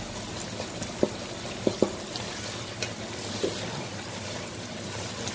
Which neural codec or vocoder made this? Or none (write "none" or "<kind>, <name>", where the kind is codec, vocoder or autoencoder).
none